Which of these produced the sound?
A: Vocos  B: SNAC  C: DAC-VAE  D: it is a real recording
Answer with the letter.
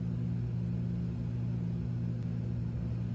D